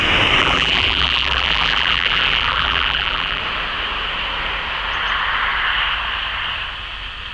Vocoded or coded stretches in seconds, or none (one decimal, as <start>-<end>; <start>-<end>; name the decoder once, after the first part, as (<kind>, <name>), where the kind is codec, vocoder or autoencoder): 0.4-3.4 (vocoder, BigVGAN v2)